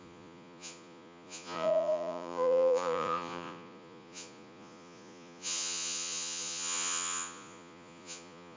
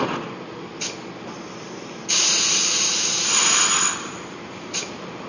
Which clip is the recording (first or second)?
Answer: second